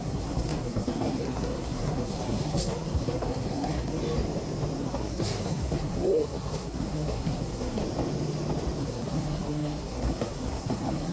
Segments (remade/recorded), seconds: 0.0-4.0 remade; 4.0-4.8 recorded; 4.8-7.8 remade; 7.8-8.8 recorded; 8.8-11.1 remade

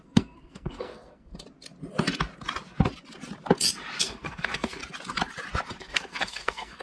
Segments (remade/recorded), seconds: 0.0-1.3 remade; 1.3-4.0 recorded; 4.0-4.8 remade; 4.8-5.8 recorded; 5.8-6.8 remade

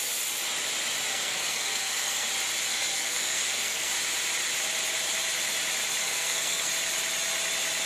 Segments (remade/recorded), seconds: 0.0-1.1 recorded; 1.1-2.3 remade; 2.3-2.7 recorded; 2.7-3.9 remade; 3.9-6.0 recorded; 6.0-6.7 remade; 6.7-7.9 recorded

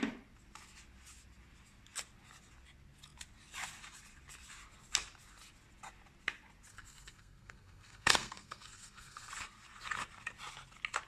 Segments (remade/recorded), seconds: 0.0-6.7 recorded; 6.7-9.3 remade; 9.3-11.1 recorded

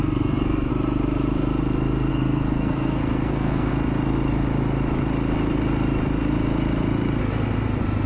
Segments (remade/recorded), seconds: 0.0-0.7 remade; 0.7-2.1 recorded; 2.1-3.7 remade; 3.7-8.1 recorded

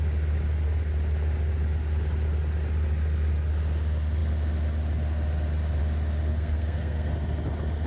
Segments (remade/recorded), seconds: 0.0-6.3 recorded; 6.3-7.1 remade; 7.1-7.9 recorded

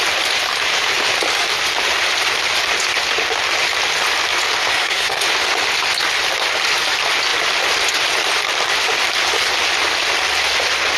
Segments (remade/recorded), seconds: 0.0-4.7 recorded; 4.7-5.2 remade; 5.2-11.0 recorded

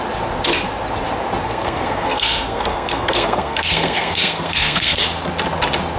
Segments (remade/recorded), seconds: 0.0-1.4 recorded; 1.4-5.0 remade; 5.0-6.0 recorded